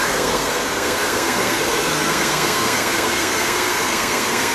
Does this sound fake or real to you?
fake